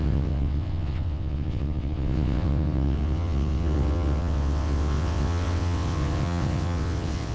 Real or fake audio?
fake